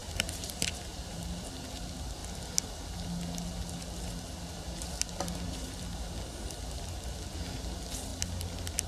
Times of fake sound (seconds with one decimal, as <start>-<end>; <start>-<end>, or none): 0.0-1.5